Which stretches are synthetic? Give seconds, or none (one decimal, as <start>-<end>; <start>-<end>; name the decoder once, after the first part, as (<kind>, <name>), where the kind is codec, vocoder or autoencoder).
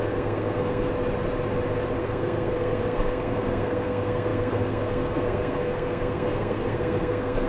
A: 0.0-0.9 (codec, SNAC); 2.0-7.5